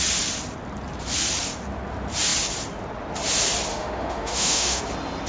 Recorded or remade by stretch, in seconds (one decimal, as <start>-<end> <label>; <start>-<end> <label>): 0.0-3.7 recorded; 3.7-4.8 remade; 4.8-5.3 recorded

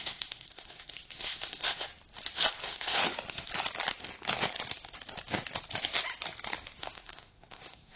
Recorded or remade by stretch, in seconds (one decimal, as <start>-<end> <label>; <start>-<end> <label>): 0.0-1.9 remade; 1.9-2.6 recorded; 2.6-3.0 remade; 3.0-6.8 recorded; 6.8-8.0 remade